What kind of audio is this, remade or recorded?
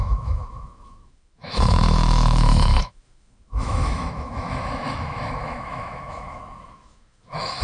remade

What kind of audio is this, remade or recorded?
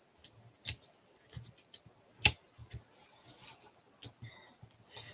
recorded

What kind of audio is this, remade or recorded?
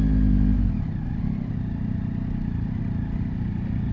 recorded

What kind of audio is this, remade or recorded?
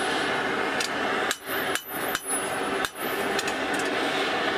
recorded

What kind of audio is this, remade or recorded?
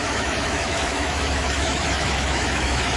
remade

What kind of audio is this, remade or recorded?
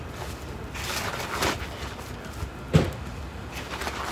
recorded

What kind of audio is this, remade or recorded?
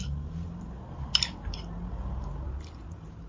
recorded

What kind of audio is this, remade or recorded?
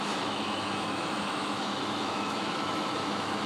remade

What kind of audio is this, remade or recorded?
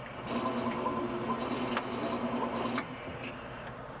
recorded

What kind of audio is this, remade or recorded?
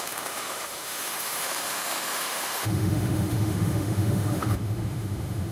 remade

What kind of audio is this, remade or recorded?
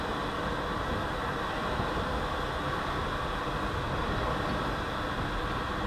recorded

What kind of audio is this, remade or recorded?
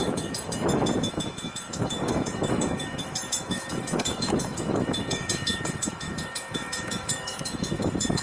remade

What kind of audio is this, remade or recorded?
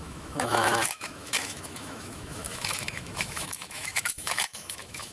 remade